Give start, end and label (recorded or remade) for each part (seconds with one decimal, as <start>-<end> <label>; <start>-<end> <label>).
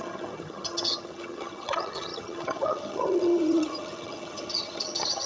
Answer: 0.0-5.3 remade